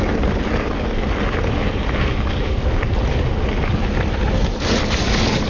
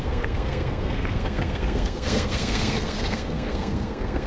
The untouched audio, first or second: first